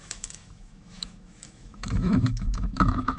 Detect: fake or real fake